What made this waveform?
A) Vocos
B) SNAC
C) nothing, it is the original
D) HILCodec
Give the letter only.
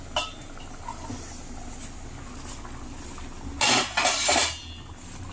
C